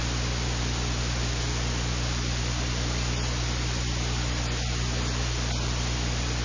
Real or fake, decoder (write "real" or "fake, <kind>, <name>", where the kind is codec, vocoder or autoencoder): real